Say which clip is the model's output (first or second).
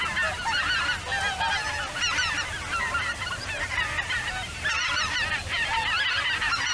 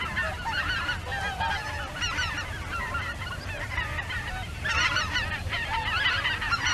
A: second